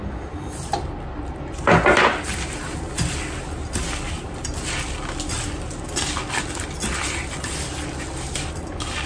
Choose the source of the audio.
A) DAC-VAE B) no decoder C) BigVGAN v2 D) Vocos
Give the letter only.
B